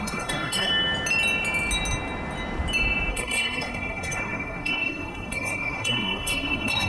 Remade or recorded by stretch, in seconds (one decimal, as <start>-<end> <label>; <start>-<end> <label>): 0.0-0.7 remade; 0.7-3.1 recorded; 3.1-6.9 remade